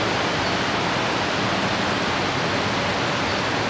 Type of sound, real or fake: real